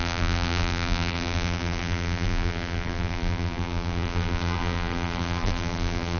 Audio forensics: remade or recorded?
remade